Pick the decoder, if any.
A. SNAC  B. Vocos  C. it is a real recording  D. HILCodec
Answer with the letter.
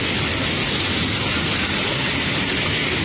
C